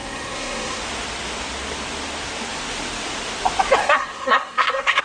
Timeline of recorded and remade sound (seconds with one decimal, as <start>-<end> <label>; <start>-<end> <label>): 0.0-0.8 remade; 0.8-3.8 recorded; 3.8-5.0 remade